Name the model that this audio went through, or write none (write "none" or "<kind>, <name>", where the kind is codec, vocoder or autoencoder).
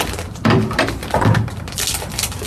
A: none